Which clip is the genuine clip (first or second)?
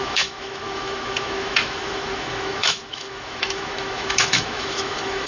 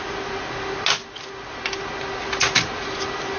second